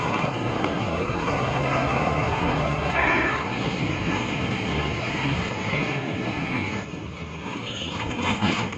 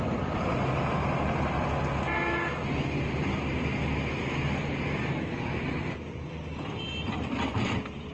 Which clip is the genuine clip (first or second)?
second